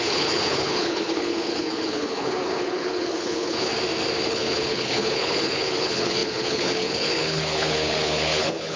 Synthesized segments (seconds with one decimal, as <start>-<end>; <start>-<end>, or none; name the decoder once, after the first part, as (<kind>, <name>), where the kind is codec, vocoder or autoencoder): 0.0-3.7 (codec, HILCodec); 4.3-8.8